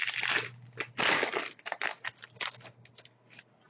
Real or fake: real